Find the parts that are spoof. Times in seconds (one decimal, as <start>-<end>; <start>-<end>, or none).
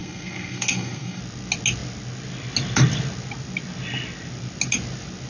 0.0-1.2